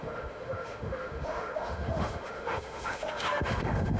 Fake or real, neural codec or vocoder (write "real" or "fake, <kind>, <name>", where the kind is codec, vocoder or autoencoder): fake, autoencoder, DAC-VAE